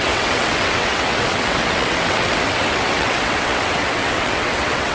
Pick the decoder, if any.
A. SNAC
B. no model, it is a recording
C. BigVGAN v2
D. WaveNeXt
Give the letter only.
D